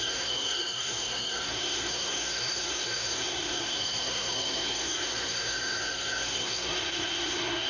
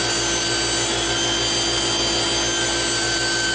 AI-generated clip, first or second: first